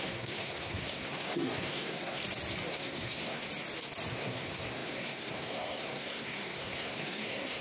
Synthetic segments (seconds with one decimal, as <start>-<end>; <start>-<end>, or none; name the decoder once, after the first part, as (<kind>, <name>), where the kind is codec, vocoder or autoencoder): 0.0-2.2 (codec, SNAC); 2.7-3.5; 4.1-7.6

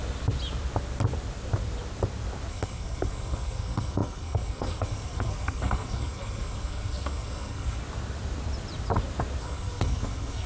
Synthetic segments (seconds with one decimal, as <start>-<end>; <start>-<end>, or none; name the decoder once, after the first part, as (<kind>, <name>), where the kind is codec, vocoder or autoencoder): 2.5-7.8 (codec, SNAC); 9.4-10.5